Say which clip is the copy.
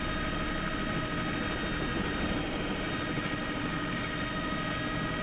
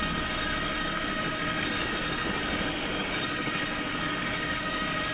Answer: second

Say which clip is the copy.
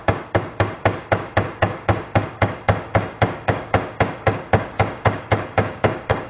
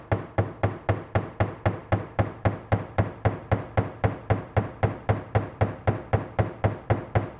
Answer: first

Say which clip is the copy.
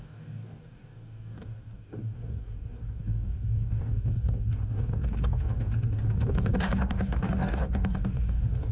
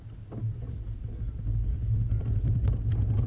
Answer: first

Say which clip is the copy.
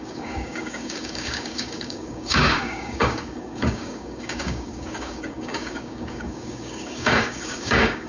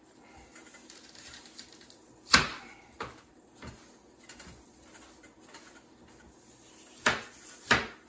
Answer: first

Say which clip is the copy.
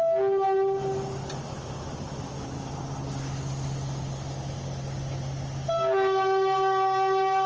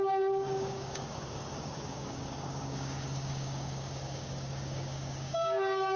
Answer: second